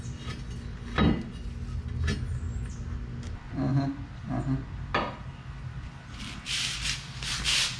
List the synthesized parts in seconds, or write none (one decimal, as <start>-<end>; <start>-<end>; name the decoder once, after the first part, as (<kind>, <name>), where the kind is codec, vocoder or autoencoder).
none